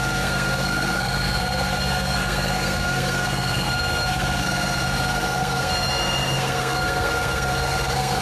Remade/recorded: remade